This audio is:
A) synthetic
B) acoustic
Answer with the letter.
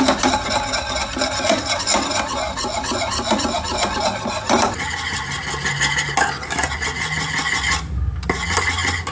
B